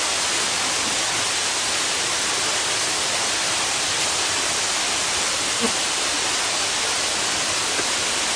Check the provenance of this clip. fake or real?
real